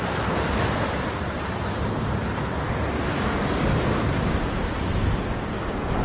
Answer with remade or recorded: recorded